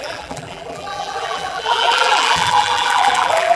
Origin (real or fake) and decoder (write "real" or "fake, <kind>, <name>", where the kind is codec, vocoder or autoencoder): fake, vocoder, BigVGAN v2